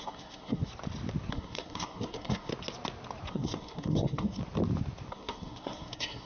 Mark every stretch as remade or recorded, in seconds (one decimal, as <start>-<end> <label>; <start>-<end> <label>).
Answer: 0.0-0.7 remade; 0.7-1.3 recorded; 1.3-2.5 remade; 2.5-3.3 recorded; 3.3-4.4 remade; 4.4-5.1 recorded; 5.1-6.3 remade